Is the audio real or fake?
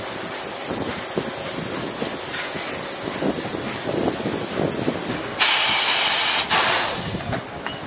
real